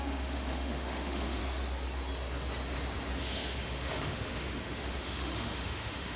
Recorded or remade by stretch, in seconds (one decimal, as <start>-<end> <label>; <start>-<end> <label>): 0.0-1.4 remade; 1.4-3.2 recorded; 3.2-6.2 remade